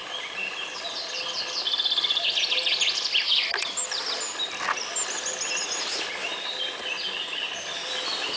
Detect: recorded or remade recorded